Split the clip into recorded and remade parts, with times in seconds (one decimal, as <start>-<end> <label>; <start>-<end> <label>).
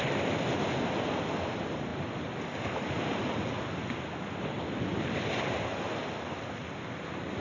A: 0.0-7.4 recorded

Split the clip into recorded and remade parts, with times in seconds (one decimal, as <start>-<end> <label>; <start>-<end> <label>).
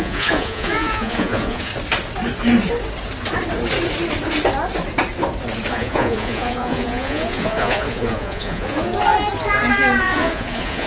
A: 0.0-1.7 remade; 1.7-5.7 recorded; 5.7-8.9 remade; 8.9-10.0 recorded; 10.0-10.9 remade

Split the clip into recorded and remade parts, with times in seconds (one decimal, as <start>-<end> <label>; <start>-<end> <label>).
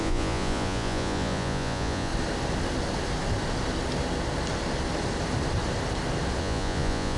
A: 0.0-2.1 remade; 2.1-6.4 recorded; 6.4-7.2 remade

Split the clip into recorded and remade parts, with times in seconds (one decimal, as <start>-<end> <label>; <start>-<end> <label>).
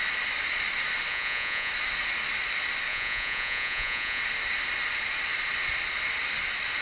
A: 0.0-1.1 recorded; 1.1-1.7 remade; 1.7-2.9 recorded; 2.9-4.2 remade; 4.2-6.8 recorded